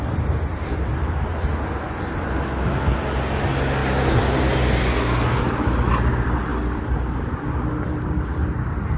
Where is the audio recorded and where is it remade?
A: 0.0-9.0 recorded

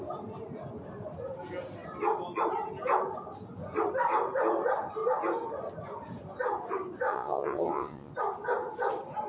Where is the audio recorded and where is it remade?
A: 0.0-7.1 recorded; 7.1-8.1 remade; 8.1-9.3 recorded

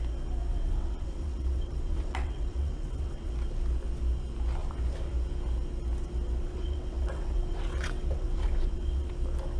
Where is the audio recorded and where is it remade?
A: 0.0-0.5 recorded; 0.5-3.3 remade; 3.3-6.5 recorded; 6.5-9.1 remade; 9.1-9.6 recorded

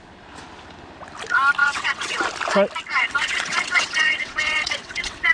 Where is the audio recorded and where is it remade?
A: 0.0-1.6 recorded; 1.6-2.2 remade; 2.2-2.9 recorded; 2.9-5.3 remade

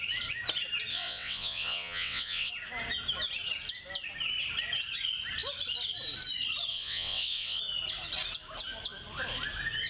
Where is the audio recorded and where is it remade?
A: 0.0-0.9 recorded; 0.9-2.5 remade; 2.5-6.7 recorded; 6.7-7.6 remade; 7.6-9.9 recorded

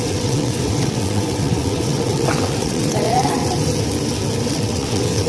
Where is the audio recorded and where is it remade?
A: 0.0-3.4 remade; 3.4-4.5 recorded; 4.5-5.3 remade

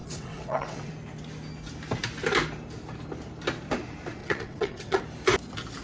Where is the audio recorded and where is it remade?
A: 0.0-0.9 remade; 0.9-4.2 recorded; 4.2-5.0 remade; 5.0-5.8 recorded

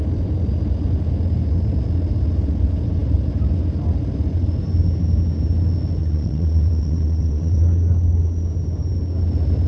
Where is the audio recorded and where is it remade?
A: 0.0-6.0 recorded; 6.0-7.6 remade; 7.6-9.7 recorded